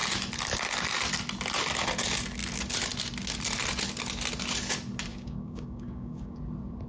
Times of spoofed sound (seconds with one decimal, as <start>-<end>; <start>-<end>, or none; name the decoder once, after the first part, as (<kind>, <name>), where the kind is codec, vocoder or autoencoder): 5.1-6.4 (codec, DAC)